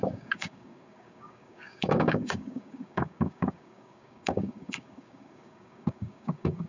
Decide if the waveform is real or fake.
fake